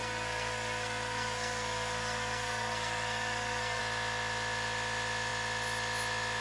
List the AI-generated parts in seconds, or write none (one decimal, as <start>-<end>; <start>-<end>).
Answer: 0.0-3.8

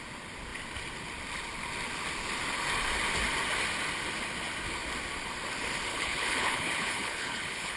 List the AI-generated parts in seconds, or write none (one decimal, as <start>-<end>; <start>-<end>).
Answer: 5.9-7.8

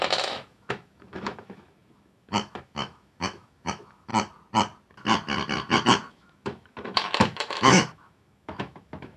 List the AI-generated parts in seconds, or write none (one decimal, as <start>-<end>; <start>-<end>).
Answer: 0.0-4.1; 6.1-9.2

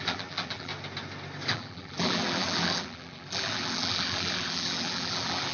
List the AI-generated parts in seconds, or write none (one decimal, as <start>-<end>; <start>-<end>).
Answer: 0.0-0.7; 1.5-5.5

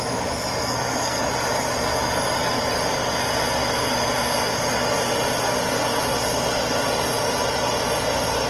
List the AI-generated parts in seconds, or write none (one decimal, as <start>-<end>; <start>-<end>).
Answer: 0.6-1.2

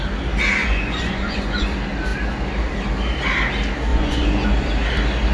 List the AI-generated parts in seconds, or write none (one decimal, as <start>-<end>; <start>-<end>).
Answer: 0.6-1.7; 3.9-4.5

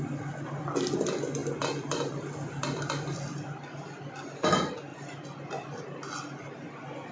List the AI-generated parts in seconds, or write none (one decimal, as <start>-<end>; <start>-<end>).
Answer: none